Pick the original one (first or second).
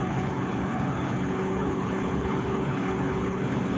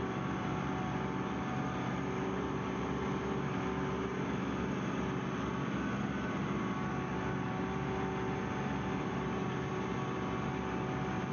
second